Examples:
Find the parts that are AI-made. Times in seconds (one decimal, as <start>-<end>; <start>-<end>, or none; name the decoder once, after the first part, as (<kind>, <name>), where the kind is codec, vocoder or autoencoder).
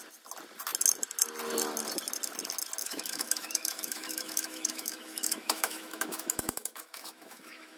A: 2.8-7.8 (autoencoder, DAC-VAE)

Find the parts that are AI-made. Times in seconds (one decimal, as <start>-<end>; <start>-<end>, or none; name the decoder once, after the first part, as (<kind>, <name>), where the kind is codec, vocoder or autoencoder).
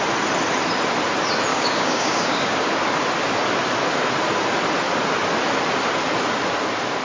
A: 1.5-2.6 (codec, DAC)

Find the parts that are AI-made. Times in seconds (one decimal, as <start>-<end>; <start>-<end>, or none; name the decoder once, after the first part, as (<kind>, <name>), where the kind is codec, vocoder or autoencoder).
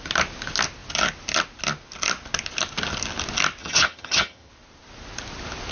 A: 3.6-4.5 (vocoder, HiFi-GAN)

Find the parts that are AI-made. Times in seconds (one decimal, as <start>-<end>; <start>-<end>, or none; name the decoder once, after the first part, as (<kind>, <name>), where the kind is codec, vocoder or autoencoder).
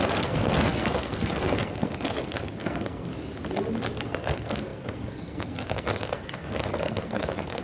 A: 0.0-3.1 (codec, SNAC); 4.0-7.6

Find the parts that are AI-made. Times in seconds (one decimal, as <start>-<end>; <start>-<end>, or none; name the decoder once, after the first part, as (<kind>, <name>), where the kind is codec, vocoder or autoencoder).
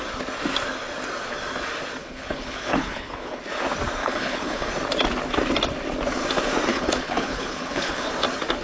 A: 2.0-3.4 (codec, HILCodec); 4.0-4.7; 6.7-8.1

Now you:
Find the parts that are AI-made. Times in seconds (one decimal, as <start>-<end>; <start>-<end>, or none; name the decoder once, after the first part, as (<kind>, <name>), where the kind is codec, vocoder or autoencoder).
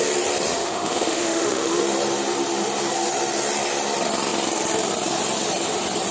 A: 0.6-1.8 (autoencoder, DAC-VAE)